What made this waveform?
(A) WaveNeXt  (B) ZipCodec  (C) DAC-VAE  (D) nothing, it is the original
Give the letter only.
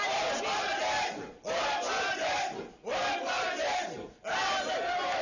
D